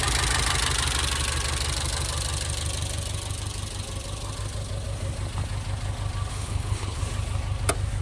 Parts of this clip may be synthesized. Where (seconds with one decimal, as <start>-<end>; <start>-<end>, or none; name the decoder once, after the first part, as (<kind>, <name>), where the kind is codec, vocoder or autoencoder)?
6.3-7.0 (codec, HILCodec)